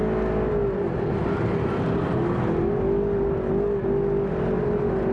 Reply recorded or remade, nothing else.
recorded